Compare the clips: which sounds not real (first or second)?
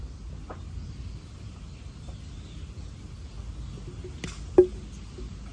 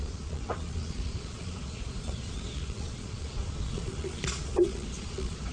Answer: second